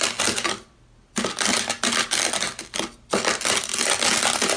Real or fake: real